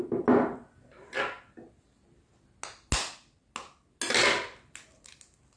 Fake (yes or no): no